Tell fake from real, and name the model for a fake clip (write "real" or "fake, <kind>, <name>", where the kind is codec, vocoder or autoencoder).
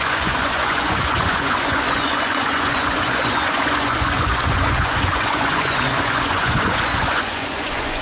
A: fake, vocoder, Vocos